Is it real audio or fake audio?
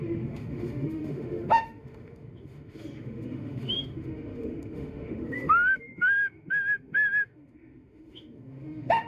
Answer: fake